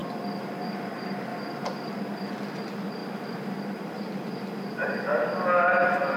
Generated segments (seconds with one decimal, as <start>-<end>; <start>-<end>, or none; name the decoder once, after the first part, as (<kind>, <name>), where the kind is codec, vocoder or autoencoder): 0.6-1.3 (vocoder, BigVGAN v2); 2.3-5.1